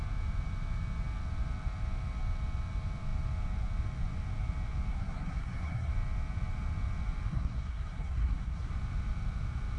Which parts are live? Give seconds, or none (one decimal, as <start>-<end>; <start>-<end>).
0.0-4.9; 5.9-7.3; 8.7-9.8

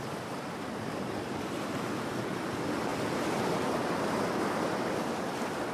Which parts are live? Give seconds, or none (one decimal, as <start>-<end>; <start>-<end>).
0.0-5.7

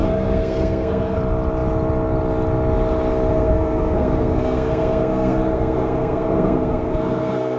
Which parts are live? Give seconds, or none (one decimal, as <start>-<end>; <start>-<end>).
1.2-3.3

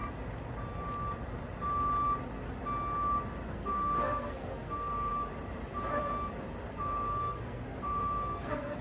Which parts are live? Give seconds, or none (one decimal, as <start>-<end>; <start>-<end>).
0.0-3.5; 5.1-6.7